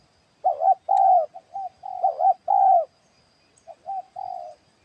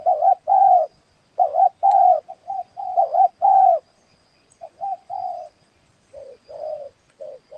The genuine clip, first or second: first